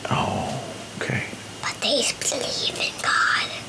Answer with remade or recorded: recorded